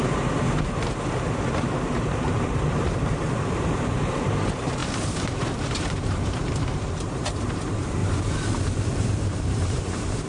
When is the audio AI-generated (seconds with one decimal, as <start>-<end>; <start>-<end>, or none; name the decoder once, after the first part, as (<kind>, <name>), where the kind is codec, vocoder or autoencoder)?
0.0-8.0 (vocoder, BigVGAN v2); 8.8-10.3